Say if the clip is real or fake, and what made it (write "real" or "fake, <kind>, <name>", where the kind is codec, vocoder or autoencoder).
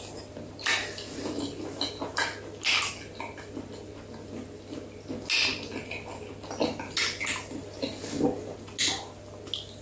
real